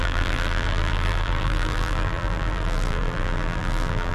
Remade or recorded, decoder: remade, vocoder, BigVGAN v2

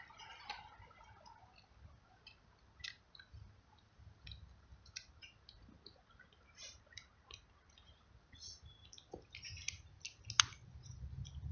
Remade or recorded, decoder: recorded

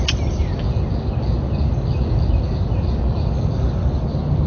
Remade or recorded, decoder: recorded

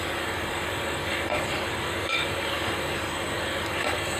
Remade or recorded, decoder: remade, codec, DAC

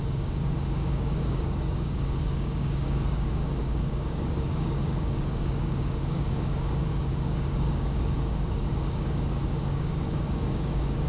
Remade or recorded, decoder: remade, codec, DAC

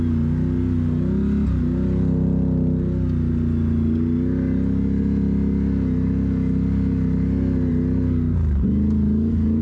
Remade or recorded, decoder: recorded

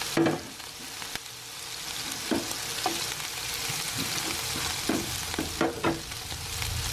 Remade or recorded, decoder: recorded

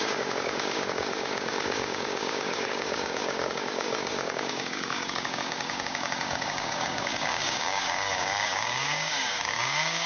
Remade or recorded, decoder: remade, codec, DAC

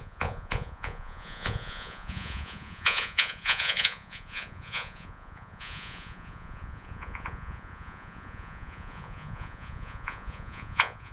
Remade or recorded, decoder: remade, vocoder, Vocos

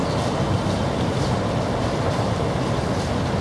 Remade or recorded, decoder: recorded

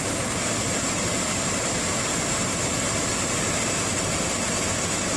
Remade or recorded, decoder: recorded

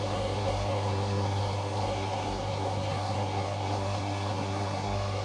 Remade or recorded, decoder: remade, codec, SNAC